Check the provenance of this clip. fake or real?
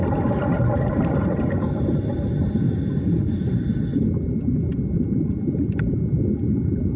real